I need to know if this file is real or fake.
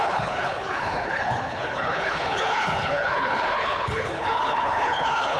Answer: fake